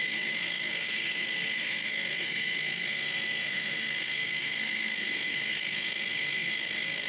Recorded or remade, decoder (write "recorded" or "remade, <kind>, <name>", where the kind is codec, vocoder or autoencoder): remade, codec, SNAC